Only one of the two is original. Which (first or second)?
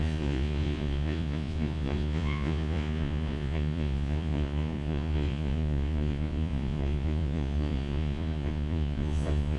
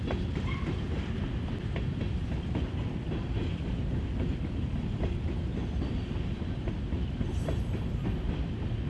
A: second